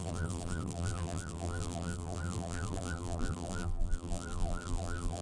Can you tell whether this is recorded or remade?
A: remade